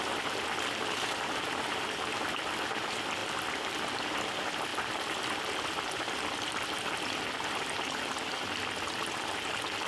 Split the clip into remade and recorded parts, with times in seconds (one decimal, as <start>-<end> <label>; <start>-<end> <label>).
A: 0.0-3.2 recorded; 3.2-4.0 remade; 4.0-4.7 recorded; 4.7-8.9 remade; 8.9-9.9 recorded

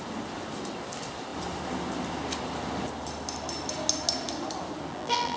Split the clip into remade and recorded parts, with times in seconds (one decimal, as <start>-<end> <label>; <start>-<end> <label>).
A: 0.0-4.9 recorded; 4.9-5.4 remade

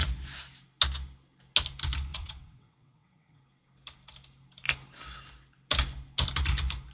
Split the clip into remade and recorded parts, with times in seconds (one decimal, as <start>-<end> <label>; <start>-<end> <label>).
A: 0.0-2.1 recorded; 2.1-3.4 remade; 3.4-6.9 recorded